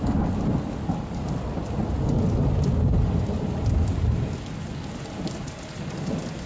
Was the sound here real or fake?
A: real